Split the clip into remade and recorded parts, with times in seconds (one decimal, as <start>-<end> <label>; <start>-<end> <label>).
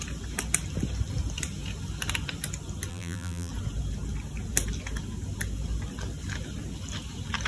0.0-2.9 recorded; 2.9-3.5 remade; 3.5-7.5 recorded